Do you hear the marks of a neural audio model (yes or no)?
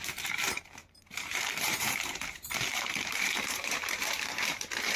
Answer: yes